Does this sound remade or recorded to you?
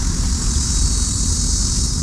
remade